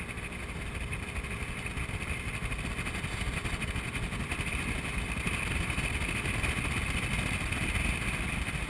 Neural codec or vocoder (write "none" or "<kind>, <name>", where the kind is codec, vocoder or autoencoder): none